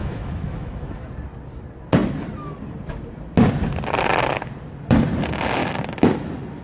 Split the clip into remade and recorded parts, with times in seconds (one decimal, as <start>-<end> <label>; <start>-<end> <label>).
0.0-1.1 remade; 1.1-6.6 recorded